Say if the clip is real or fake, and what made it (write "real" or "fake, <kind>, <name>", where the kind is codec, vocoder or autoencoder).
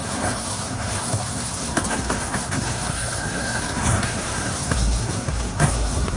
fake, codec, SNAC